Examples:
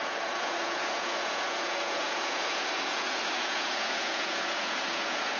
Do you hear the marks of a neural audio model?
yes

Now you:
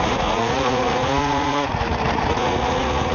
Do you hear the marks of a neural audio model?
yes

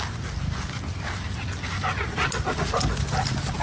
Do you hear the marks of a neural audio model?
no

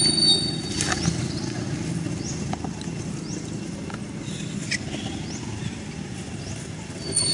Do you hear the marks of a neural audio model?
no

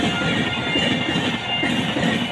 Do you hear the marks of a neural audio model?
no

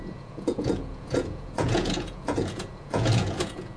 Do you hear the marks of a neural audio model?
yes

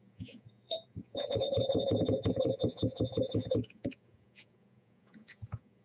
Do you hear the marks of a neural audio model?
yes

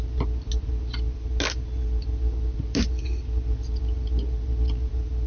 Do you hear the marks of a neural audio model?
no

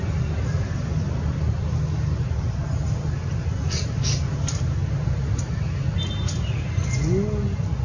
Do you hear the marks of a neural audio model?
no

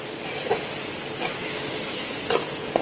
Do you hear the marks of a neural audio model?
no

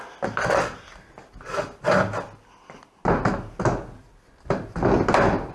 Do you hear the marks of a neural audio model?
no